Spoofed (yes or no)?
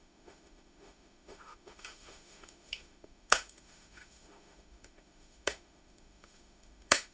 yes